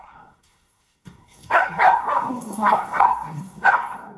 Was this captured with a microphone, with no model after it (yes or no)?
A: no